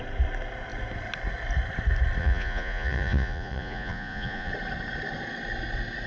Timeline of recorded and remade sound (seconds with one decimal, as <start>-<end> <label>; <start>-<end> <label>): 0.0-2.2 recorded; 2.2-4.5 remade; 4.5-6.1 recorded